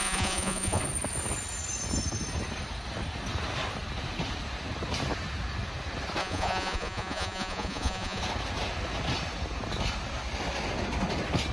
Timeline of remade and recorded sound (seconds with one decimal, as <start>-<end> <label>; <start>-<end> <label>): 0.0-0.8 remade; 0.8-6.2 recorded; 6.2-8.2 remade; 8.2-11.5 recorded